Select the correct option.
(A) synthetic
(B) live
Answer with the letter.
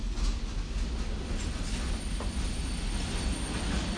B